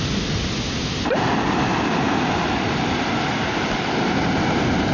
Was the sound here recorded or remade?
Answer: recorded